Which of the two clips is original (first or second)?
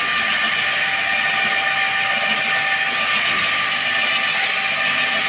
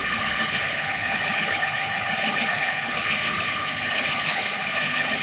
first